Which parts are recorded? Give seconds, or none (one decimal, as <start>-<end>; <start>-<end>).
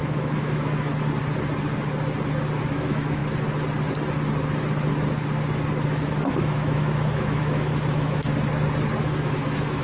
0.9-2.6; 3.2-6.3; 8.3-9.0